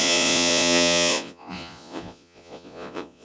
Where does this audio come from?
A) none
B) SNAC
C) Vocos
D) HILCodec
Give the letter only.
C